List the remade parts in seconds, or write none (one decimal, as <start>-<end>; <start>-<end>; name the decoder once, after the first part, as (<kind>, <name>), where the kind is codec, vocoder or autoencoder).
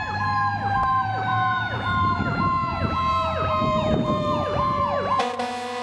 1.3-4.8 (vocoder, Vocos)